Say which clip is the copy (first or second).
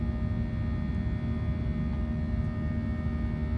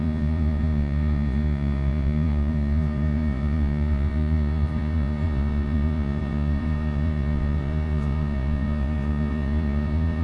second